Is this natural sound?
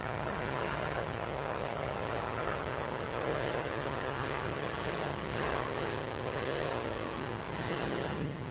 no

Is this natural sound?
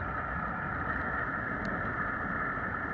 yes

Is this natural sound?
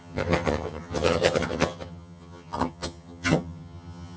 no